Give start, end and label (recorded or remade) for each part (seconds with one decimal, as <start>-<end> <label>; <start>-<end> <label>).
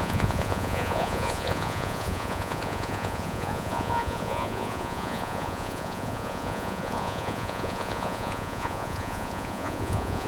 0.0-10.3 remade